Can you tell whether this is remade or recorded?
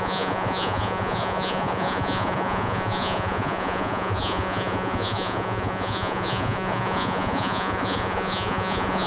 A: remade